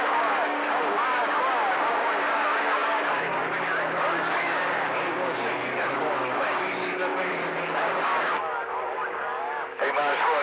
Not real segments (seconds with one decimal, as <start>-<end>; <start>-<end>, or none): 0.0-10.4